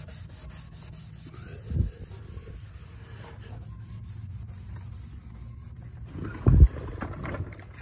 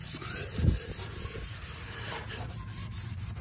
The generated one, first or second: second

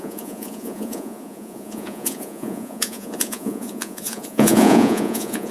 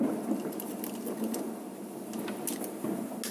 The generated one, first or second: first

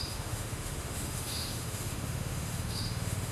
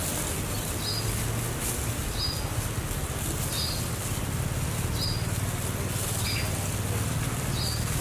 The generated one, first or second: first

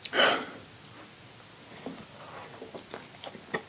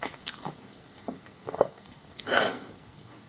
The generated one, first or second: second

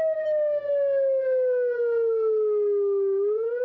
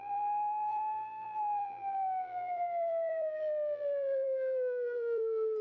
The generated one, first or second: second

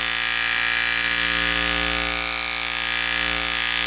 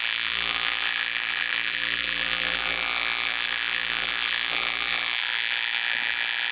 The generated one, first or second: second